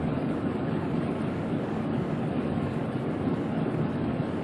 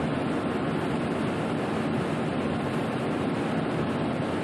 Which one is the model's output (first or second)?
first